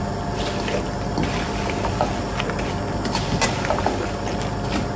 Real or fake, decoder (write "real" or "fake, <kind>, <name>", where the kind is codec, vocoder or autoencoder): real